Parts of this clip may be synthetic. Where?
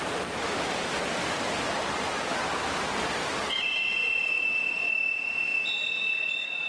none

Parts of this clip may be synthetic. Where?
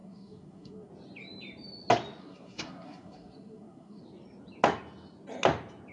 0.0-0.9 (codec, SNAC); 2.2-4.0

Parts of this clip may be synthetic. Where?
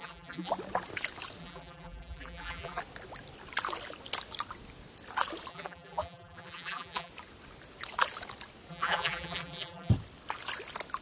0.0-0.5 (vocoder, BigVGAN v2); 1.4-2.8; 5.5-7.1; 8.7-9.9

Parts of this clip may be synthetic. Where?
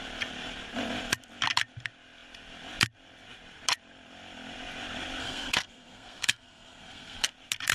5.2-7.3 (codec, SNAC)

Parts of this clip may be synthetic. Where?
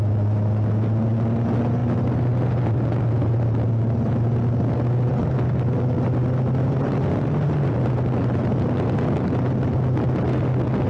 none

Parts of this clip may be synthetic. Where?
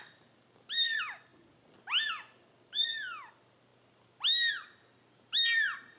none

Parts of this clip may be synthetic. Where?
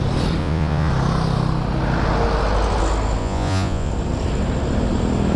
0.4-0.9 (vocoder, Vocos); 3.2-3.9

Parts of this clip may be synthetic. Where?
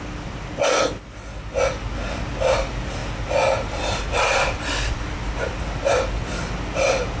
none